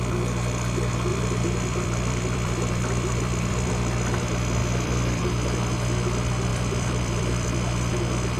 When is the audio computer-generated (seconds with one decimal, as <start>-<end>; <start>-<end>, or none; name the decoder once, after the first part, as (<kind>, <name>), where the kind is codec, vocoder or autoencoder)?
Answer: 1.1-3.7 (vocoder, BigVGAN v2); 4.6-5.2; 6.5-7.9